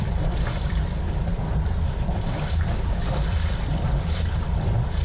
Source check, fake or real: fake